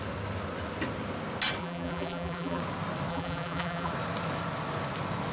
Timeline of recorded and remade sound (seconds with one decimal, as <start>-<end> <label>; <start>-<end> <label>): 0.0-1.6 recorded; 1.6-2.6 remade; 2.6-3.1 recorded; 3.1-3.9 remade; 3.9-5.3 recorded